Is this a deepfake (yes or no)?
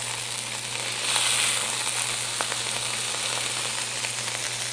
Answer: no